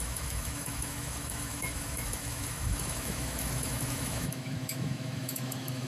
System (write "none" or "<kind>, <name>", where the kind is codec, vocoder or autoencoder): autoencoder, DAC-VAE